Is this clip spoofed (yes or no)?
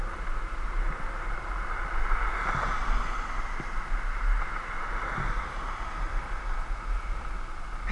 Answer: no